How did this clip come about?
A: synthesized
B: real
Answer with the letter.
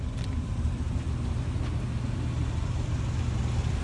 B